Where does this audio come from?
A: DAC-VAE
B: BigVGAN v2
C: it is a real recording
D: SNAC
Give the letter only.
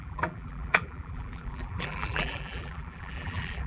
B